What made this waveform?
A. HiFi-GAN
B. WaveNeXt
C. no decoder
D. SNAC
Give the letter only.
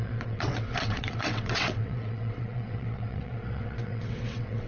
B